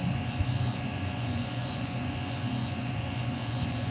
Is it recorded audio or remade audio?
remade